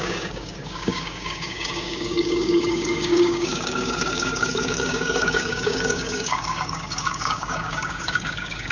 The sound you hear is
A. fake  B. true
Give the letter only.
A